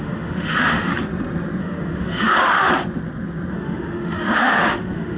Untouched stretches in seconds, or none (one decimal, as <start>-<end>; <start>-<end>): 0.9-1.6; 2.7-3.5